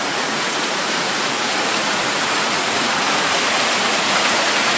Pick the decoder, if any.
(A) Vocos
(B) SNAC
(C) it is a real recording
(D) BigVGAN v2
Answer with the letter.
A